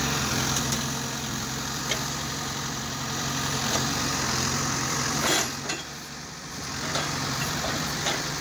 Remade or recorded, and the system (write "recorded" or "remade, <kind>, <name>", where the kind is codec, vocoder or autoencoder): remade, vocoder, BigVGAN v2